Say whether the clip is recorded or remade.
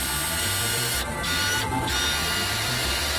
recorded